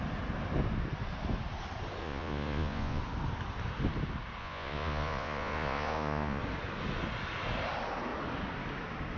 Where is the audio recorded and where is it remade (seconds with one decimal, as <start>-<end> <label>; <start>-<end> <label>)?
0.0-2.0 recorded; 2.0-3.0 remade; 3.0-4.4 recorded; 4.4-6.4 remade; 6.4-9.2 recorded